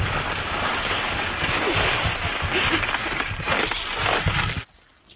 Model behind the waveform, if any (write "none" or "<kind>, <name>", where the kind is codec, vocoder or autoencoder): none